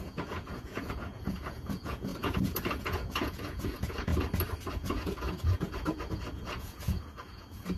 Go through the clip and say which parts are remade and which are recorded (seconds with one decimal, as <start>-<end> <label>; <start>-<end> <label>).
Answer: 0.0-4.1 remade; 4.1-4.7 recorded; 4.7-7.8 remade